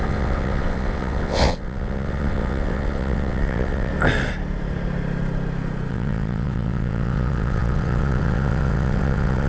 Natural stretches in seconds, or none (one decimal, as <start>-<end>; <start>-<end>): 3.9-5.9